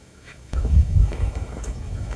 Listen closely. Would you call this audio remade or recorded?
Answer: remade